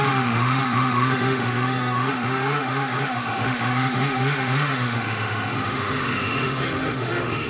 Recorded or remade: remade